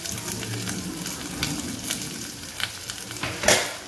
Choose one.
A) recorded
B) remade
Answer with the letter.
A